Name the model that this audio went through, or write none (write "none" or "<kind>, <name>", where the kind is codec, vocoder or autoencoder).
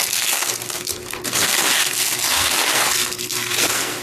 codec, SNAC